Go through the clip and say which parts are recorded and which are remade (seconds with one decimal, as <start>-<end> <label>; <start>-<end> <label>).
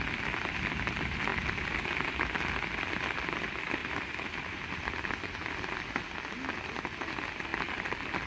0.0-3.8 recorded; 3.8-4.6 remade; 4.6-8.3 recorded